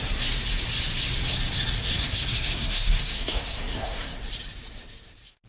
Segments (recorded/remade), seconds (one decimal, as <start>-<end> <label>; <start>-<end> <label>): 0.0-1.8 recorded; 1.8-4.2 remade; 4.2-5.5 recorded